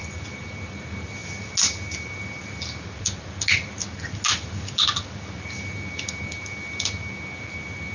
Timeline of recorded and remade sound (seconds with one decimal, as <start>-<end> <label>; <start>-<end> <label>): 0.0-7.9 recorded